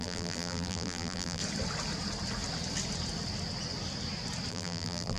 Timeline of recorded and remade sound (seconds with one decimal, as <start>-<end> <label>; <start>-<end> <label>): 0.0-1.4 remade; 1.4-4.5 recorded; 4.5-5.2 remade